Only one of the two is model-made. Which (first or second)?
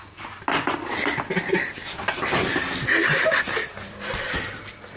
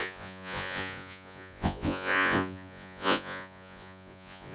second